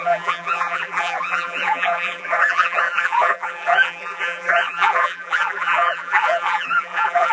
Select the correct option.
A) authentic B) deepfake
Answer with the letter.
B